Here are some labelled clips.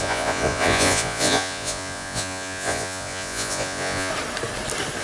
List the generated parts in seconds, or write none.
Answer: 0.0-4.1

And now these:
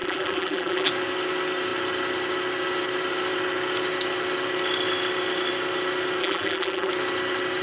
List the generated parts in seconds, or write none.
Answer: 0.0-0.9; 6.2-6.9

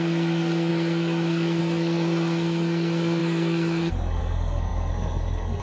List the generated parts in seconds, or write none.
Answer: 0.0-5.6

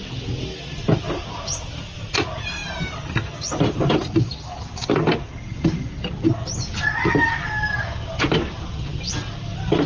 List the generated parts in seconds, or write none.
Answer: none

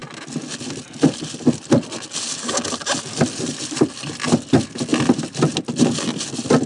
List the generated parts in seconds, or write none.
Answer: none

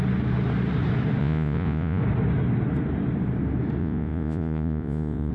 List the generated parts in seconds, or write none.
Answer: 1.2-2.0; 3.8-5.3

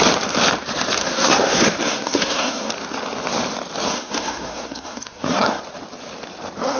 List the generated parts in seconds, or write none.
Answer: 1.0-2.7; 3.9-5.6